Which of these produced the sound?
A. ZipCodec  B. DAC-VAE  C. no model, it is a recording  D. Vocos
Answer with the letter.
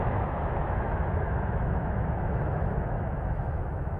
B